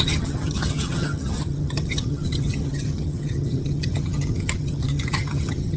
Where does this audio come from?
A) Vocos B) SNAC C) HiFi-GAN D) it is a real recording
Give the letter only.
C